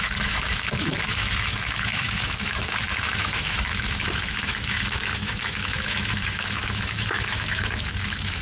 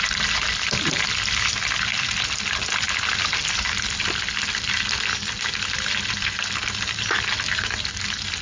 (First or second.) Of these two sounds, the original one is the second